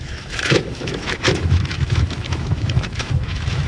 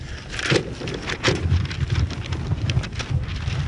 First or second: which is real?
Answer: second